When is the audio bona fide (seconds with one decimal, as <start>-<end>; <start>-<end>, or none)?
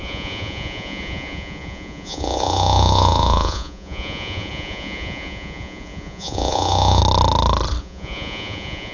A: 7.0-7.8